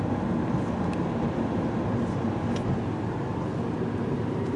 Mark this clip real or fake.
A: real